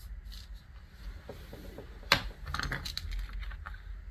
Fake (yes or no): no